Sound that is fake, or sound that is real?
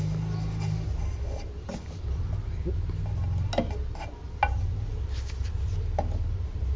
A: real